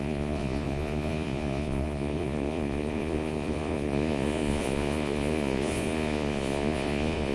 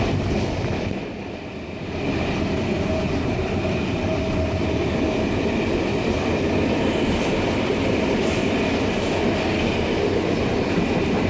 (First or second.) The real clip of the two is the second